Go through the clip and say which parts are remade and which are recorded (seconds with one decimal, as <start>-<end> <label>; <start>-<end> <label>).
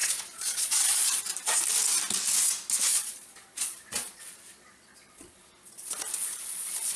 0.0-1.2 remade; 1.2-2.9 recorded; 2.9-7.0 remade